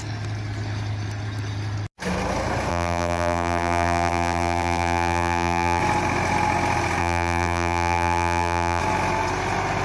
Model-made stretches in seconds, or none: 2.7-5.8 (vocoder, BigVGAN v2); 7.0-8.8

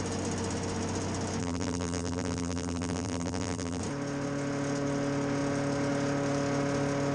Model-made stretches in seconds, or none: 1.4-3.8 (vocoder, BigVGAN v2)

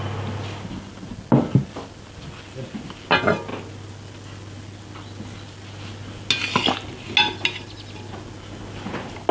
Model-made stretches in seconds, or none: none